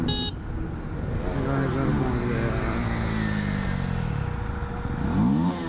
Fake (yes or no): no